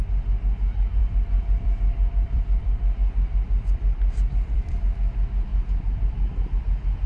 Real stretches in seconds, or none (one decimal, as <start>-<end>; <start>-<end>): 0.0-1.0; 4.8-5.5; 6.6-7.1